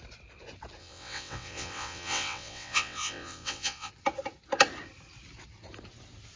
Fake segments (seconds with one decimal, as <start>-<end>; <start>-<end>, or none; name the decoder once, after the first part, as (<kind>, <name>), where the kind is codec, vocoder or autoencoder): 0.8-3.9 (vocoder, WaveNeXt)